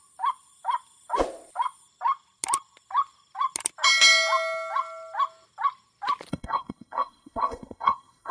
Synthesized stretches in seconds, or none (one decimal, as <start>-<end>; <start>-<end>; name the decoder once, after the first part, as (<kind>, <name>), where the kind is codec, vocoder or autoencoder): 6.3-8.3 (codec, SNAC)